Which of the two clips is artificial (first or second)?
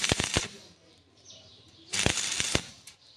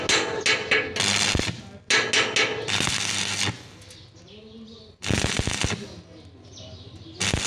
first